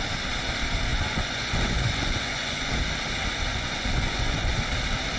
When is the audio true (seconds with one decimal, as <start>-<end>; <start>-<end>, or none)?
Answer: 0.0-0.9; 2.7-3.5; 4.6-5.2